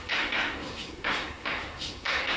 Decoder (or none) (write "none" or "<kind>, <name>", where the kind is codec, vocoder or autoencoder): codec, SNAC